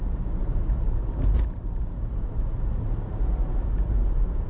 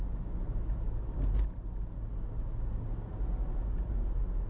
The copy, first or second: first